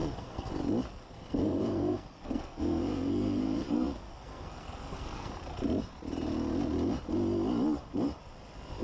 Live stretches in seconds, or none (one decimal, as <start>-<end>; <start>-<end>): 0.5-0.9; 5.3-8.8